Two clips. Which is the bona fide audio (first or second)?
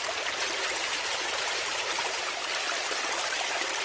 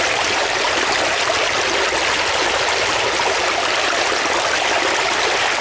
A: second